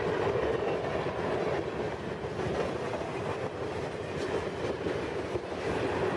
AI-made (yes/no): no